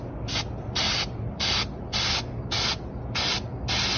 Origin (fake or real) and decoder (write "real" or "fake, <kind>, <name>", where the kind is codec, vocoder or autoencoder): real